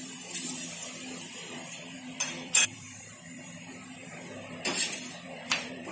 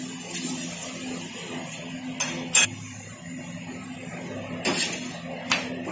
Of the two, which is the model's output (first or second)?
first